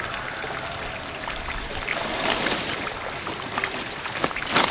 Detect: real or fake real